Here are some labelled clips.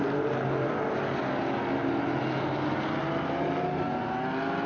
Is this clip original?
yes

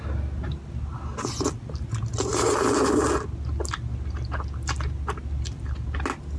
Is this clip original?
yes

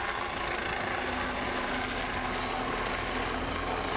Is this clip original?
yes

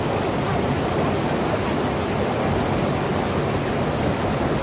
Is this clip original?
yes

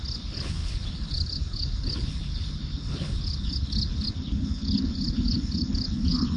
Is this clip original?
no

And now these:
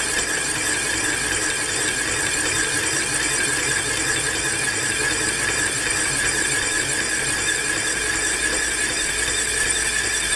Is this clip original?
yes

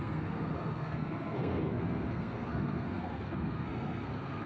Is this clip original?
no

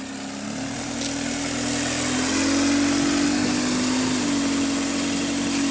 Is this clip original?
yes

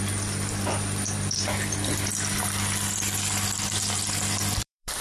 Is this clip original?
no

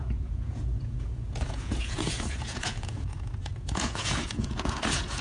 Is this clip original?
no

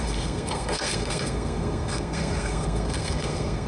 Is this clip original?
no